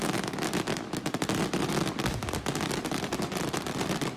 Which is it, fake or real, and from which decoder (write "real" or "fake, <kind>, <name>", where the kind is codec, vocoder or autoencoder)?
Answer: real